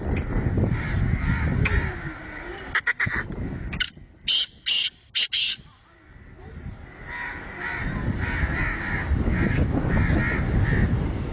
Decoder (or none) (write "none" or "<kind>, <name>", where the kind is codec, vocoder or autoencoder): none